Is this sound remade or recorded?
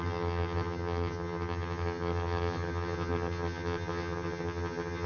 remade